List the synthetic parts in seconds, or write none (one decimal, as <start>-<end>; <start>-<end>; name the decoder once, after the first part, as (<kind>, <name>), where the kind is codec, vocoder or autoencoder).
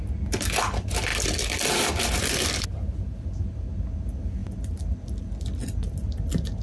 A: none